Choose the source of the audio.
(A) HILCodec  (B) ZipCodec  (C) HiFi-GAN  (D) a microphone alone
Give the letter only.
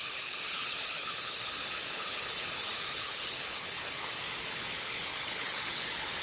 A